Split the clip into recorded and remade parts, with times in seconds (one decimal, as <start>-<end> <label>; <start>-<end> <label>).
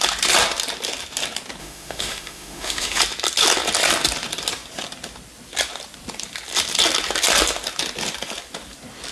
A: 0.0-1.6 recorded; 1.6-3.0 remade; 3.0-9.1 recorded